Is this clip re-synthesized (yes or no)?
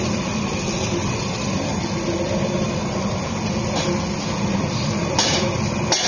no